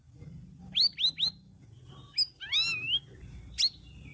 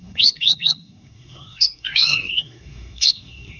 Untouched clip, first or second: first